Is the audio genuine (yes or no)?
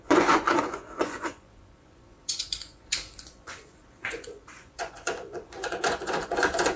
no